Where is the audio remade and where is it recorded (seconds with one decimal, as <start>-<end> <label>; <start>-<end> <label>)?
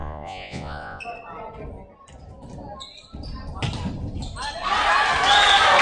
0.0-1.0 remade; 1.0-5.8 recorded